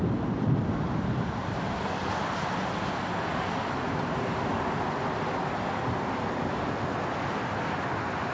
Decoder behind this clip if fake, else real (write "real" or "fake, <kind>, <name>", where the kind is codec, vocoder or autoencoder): real